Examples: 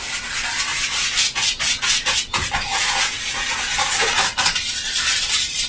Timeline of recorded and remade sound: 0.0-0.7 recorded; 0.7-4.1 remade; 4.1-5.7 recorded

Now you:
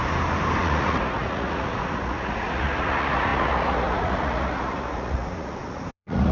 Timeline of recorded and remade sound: 0.0-0.6 recorded; 0.6-6.3 remade

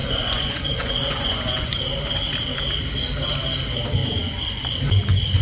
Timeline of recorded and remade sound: 0.0-1.8 remade; 1.8-4.0 recorded; 4.0-4.8 remade; 4.8-5.4 recorded

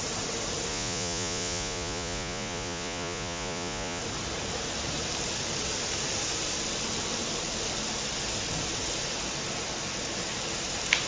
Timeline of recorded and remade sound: 0.0-0.7 recorded; 0.7-4.0 remade; 4.0-11.1 recorded

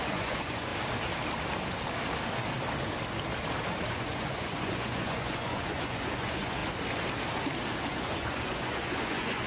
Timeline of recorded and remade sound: 0.0-0.7 remade; 0.7-3.9 recorded; 3.9-6.6 remade; 6.6-7.8 recorded; 7.8-9.5 remade

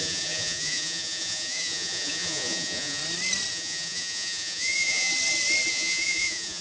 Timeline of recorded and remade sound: 0.0-3.0 remade; 3.0-3.5 recorded; 3.5-5.1 remade; 5.1-5.7 recorded; 5.7-6.6 remade

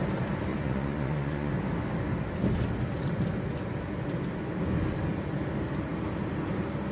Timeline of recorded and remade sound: 0.0-0.5 recorded; 0.5-1.5 remade; 1.5-6.9 recorded